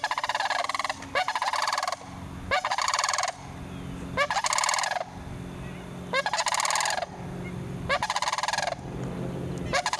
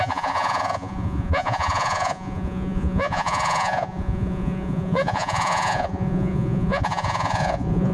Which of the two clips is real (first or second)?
first